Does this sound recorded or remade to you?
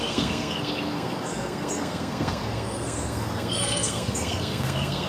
remade